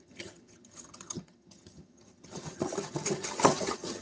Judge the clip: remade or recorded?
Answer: remade